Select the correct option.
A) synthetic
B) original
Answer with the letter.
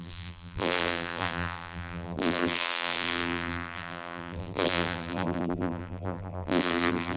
A